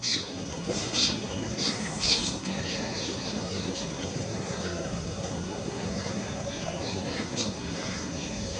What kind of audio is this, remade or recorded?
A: remade